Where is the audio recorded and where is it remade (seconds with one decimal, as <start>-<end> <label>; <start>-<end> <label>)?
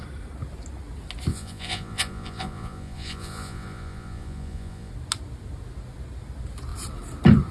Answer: 0.0-1.3 recorded; 1.3-4.9 remade; 4.9-7.5 recorded